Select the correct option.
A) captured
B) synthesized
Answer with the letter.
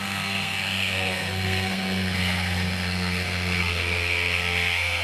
B